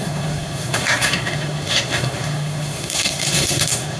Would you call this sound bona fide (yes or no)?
no